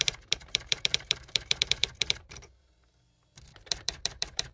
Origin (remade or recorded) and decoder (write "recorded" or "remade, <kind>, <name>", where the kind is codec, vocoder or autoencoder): remade, vocoder, BigVGAN v2